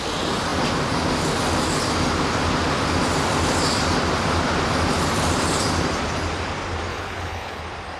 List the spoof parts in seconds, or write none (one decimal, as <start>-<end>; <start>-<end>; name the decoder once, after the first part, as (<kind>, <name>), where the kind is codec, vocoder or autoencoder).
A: 6.9-7.6 (codec, HILCodec)